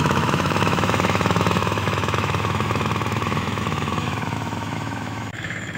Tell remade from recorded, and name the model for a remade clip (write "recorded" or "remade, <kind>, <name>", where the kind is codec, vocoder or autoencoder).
remade, autoencoder, DAC-VAE